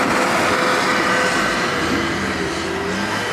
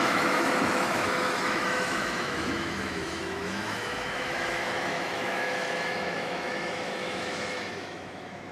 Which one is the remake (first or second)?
second